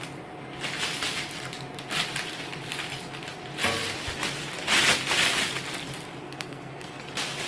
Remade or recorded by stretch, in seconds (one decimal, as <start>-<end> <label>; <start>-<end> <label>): 0.0-6.2 recorded; 6.2-7.1 remade; 7.1-7.5 recorded